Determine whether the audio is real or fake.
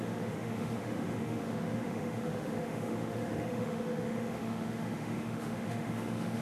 fake